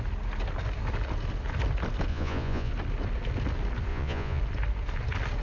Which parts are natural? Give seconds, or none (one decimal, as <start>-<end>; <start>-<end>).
0.0-2.1; 2.7-3.9; 4.4-5.4